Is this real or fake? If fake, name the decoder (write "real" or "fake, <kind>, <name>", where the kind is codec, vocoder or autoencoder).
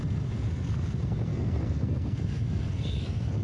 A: fake, codec, SNAC